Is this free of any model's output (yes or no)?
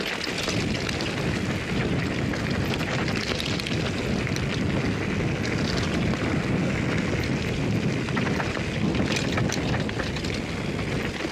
yes